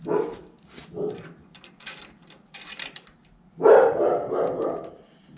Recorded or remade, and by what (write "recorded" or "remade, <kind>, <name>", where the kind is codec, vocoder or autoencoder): recorded